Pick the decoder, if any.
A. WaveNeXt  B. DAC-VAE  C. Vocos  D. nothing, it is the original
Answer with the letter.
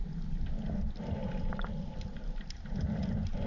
D